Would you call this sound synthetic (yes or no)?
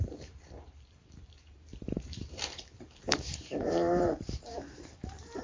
yes